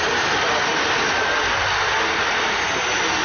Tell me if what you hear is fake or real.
real